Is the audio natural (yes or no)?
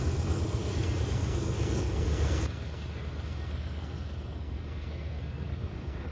no